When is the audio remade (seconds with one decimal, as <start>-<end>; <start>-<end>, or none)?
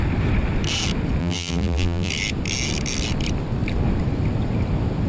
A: 1.2-2.1